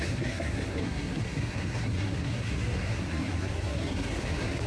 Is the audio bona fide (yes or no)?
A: no